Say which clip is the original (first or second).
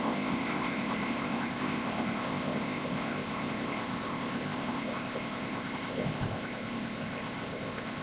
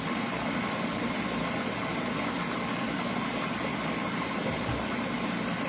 second